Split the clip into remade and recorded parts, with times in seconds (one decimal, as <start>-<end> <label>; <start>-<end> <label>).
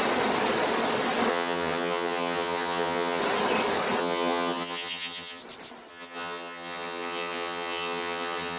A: 0.0-1.3 recorded; 1.3-3.2 remade; 3.2-4.0 recorded; 4.0-5.4 remade; 5.4-5.9 recorded; 5.9-8.6 remade